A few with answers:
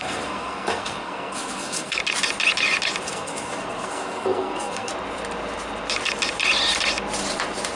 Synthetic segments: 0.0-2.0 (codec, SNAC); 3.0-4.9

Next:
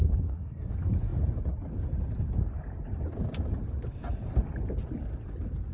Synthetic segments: 0.0-0.7 (codec, SNAC)